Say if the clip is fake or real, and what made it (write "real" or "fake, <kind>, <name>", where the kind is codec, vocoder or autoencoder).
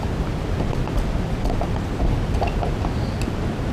real